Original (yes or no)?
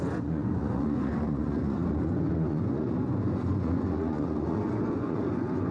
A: no